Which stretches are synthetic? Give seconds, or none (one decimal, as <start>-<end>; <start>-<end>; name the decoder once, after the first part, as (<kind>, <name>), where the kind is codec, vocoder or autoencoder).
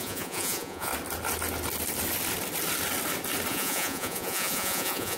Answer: 0.0-0.9 (vocoder, Vocos); 3.5-5.2